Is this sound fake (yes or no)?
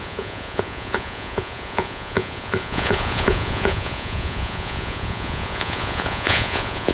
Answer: yes